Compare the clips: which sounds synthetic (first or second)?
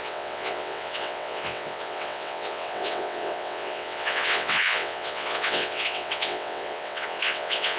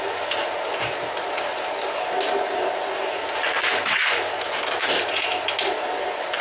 first